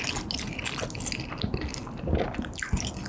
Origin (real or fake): real